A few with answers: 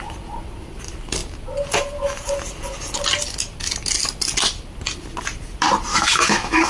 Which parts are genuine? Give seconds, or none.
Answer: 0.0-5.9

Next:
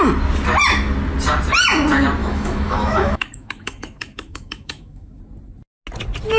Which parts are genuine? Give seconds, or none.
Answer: 0.0-2.2; 5.2-6.4